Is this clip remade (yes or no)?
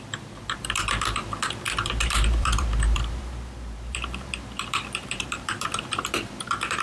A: yes